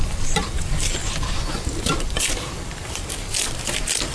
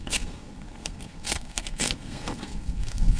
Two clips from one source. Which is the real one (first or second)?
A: first